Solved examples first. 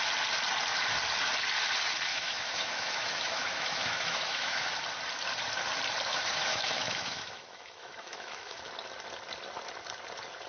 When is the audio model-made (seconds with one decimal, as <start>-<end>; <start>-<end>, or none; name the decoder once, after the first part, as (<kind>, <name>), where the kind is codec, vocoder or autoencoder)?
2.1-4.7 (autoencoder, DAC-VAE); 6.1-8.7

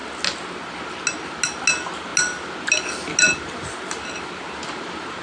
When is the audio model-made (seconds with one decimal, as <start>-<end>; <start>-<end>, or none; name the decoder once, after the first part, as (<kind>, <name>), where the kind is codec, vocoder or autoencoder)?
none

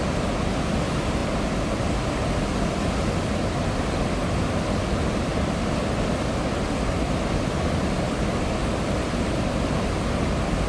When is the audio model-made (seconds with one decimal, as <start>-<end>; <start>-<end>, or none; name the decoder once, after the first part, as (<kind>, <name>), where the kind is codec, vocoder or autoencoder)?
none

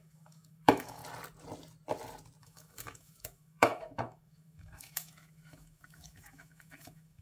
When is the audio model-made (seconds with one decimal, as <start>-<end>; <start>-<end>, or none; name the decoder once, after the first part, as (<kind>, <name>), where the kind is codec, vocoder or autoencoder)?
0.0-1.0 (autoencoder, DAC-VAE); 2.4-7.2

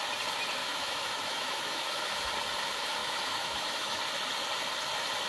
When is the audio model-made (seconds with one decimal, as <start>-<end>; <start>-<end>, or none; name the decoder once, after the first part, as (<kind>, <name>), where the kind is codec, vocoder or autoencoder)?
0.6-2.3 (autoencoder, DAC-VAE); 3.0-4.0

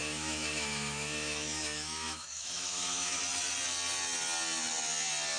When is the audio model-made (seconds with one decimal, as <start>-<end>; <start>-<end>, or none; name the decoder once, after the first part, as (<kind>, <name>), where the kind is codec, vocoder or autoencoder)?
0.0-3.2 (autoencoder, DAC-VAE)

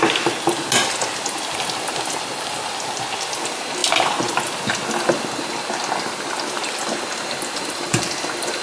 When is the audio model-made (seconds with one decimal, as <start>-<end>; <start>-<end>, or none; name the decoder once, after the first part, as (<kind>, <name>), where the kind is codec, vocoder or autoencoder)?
none

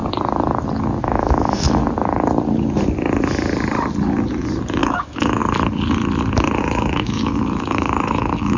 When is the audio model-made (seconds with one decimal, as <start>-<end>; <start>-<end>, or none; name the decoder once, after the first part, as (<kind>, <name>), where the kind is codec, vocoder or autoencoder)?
1.0-1.8 (autoencoder, DAC-VAE); 4.8-5.4; 6.6-8.6